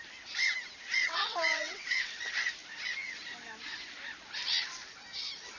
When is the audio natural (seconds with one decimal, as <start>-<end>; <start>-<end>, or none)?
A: 0.0-1.0; 2.1-5.6